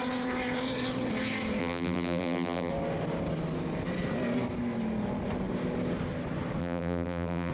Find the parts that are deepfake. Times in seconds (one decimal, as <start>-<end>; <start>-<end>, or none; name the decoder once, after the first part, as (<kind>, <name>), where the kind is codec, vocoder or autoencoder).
1.6-2.7 (vocoder, BigVGAN v2); 6.6-7.5